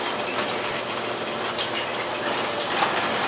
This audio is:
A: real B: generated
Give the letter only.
A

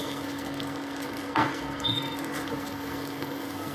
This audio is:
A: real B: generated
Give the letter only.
B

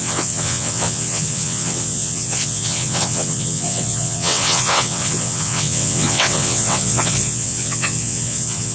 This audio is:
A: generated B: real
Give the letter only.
A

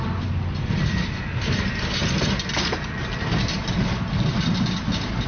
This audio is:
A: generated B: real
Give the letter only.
B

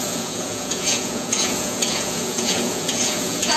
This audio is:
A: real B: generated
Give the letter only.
B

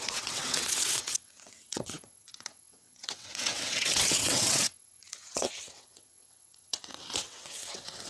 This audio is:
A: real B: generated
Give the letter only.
B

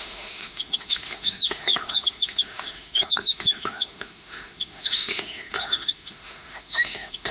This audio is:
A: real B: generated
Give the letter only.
B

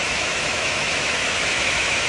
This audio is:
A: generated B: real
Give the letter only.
A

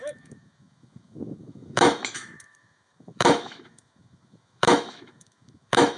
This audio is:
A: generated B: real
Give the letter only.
A